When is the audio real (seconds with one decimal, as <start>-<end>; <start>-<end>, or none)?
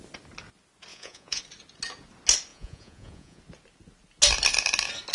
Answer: 0.0-0.9; 1.4-2.5; 3.4-5.1